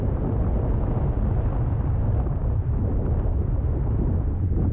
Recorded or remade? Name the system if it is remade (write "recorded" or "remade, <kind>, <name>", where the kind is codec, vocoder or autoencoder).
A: recorded